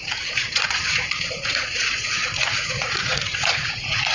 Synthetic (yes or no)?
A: yes